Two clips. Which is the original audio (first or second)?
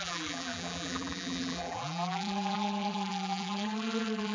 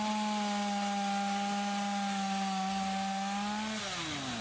second